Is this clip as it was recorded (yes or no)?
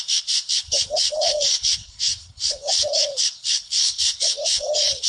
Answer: no